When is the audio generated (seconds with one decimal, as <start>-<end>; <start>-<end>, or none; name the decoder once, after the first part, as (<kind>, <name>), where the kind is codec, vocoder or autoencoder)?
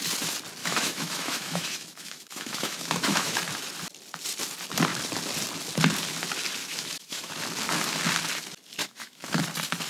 0.6-3.4 (autoencoder, DAC-VAE); 6.6-7.3; 8.8-9.4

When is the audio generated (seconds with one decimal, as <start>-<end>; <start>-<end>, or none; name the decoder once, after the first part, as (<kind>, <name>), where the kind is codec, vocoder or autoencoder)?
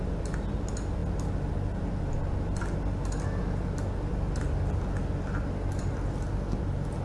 none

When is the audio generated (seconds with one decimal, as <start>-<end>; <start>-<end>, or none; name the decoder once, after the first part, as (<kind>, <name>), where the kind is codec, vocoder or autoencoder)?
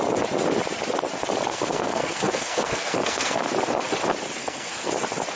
1.5-3.5 (codec, SNAC); 4.4-4.9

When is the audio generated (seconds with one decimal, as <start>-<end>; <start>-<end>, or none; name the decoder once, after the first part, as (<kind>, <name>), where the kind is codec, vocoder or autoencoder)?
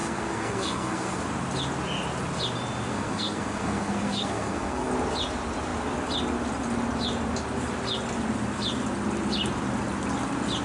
0.0-1.2 (codec, SNAC); 2.9-4.9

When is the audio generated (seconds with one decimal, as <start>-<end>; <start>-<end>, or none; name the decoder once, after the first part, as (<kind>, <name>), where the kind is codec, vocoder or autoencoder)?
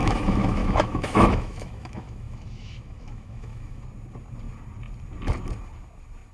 0.0-3.8 (autoencoder, DAC-VAE)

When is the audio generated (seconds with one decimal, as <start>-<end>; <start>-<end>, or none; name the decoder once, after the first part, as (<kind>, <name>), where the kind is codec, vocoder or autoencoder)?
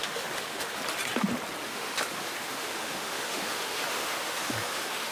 0.0-0.8 (autoencoder, DAC-VAE); 1.6-5.1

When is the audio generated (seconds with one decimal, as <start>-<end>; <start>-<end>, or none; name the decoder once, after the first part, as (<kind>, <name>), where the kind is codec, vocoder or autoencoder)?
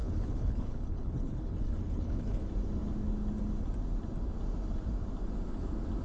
0.0-2.4 (codec, HILCodec)